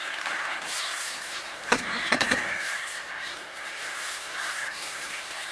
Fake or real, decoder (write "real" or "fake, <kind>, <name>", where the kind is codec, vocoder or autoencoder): fake, codec, SNAC